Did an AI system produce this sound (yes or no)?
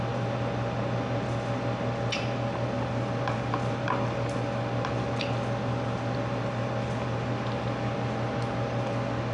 no